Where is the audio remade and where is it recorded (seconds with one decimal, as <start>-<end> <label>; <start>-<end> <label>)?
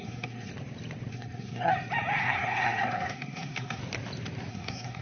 0.0-0.5 remade; 0.5-1.1 recorded; 1.1-1.7 remade; 1.7-2.2 recorded; 2.2-3.8 remade; 3.8-4.5 recorded; 4.5-5.0 remade